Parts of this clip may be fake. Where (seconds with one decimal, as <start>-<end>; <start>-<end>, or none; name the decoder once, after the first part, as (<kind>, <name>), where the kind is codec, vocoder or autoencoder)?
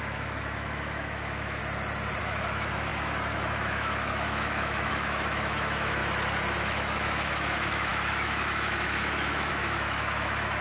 0.0-1.6 (autoencoder, DAC-VAE); 2.2-6.0; 6.6-10.6